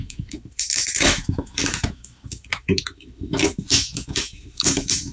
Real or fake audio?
fake